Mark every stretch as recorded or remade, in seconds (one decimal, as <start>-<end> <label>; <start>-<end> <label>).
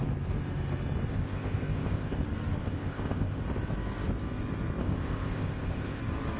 0.0-1.1 recorded; 1.1-2.2 remade; 2.2-2.6 recorded; 2.6-3.4 remade; 3.4-4.8 recorded; 4.8-6.0 remade; 6.0-6.4 recorded